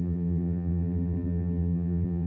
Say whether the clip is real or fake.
fake